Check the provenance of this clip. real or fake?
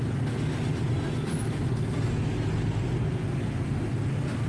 real